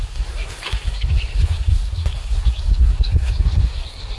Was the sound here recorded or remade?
remade